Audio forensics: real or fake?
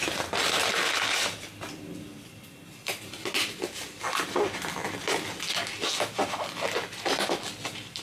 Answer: real